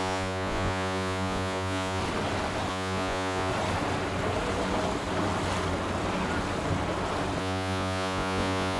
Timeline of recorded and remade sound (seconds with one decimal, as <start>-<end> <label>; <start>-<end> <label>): 0.0-2.0 remade; 2.0-2.7 recorded; 2.7-3.5 remade; 3.5-7.4 recorded; 7.4-8.8 remade